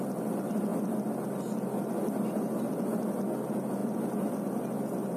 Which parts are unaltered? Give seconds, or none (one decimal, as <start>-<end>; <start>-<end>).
0.0-5.2